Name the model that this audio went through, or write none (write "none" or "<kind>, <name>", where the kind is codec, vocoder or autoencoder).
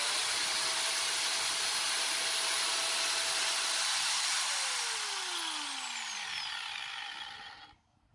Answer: none